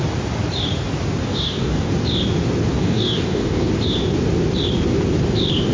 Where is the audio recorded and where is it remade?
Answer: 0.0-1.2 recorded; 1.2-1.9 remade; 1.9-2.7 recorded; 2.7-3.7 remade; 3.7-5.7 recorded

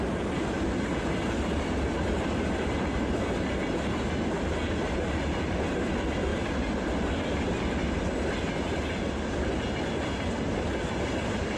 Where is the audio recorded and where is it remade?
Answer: 0.0-11.6 recorded

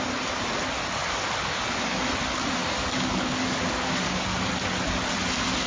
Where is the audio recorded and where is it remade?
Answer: 0.0-1.0 recorded; 1.0-2.0 remade; 2.0-2.6 recorded; 2.6-4.5 remade; 4.5-5.7 recorded